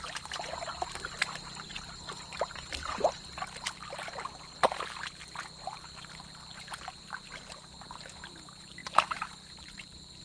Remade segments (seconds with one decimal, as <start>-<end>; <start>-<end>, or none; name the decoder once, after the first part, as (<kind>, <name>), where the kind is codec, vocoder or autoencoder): 8.8-10.2 (vocoder, BigVGAN v2)